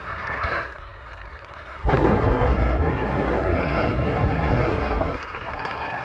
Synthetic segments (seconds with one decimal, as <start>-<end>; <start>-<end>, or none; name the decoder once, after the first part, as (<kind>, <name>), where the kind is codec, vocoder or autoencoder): 0.0-6.0 (codec, SNAC)